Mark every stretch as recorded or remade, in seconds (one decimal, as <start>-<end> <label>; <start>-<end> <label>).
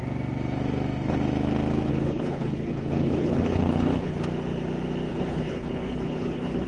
0.0-1.9 recorded; 1.9-4.2 remade; 4.2-5.1 recorded; 5.1-6.7 remade